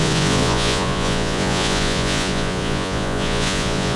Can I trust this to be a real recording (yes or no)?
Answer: no